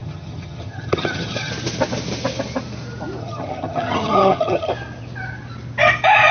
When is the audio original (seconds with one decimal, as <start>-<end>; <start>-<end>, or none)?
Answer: 1.5-3.2; 4.7-6.3